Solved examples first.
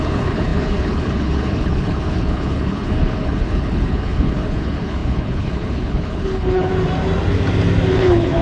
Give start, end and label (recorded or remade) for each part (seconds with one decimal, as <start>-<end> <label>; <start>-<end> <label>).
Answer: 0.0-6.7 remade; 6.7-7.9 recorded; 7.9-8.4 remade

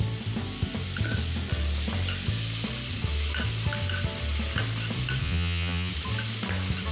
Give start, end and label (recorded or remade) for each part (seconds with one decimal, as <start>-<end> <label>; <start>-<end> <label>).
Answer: 0.0-5.2 recorded; 5.2-5.9 remade; 5.9-6.9 recorded

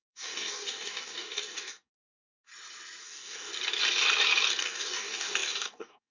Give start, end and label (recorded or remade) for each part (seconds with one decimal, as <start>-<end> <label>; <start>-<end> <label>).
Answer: 0.0-2.5 remade; 2.5-3.0 recorded; 3.0-3.5 remade; 3.5-4.6 recorded; 4.6-6.1 remade

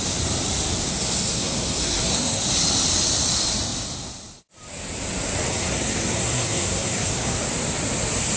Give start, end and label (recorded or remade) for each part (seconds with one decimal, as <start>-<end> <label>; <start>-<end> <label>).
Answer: 0.0-0.9 recorded; 0.9-2.4 remade; 2.4-5.5 recorded; 5.5-7.4 remade; 7.4-8.4 recorded